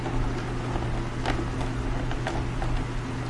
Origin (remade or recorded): recorded